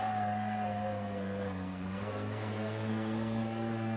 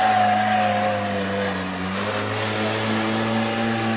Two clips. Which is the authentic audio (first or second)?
second